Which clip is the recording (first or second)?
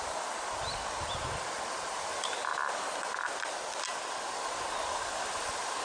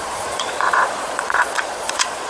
first